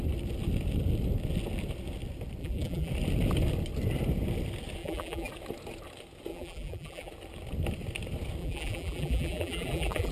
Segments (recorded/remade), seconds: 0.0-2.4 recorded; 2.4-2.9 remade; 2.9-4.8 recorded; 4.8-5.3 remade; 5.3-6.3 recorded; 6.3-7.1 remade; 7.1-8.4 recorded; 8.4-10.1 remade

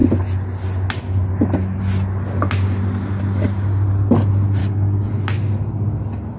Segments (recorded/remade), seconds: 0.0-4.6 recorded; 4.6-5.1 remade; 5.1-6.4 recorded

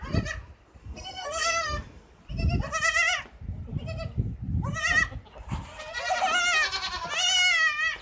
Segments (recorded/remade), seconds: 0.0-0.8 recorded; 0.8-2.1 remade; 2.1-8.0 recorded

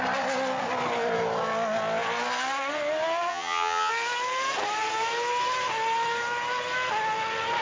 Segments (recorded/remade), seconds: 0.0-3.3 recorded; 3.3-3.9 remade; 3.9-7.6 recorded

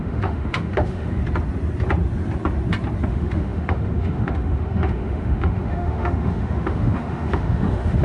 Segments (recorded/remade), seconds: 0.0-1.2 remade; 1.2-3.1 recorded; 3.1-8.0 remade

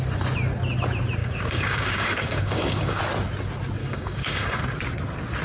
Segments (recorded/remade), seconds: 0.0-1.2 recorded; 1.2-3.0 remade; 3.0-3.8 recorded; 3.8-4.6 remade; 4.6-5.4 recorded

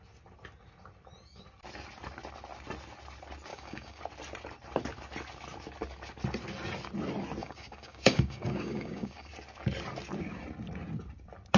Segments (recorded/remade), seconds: 0.0-3.5 recorded; 3.5-4.0 remade; 4.0-7.4 recorded; 7.4-9.3 remade; 9.3-11.6 recorded

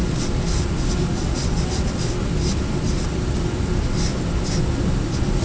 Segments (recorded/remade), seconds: 0.0-5.4 recorded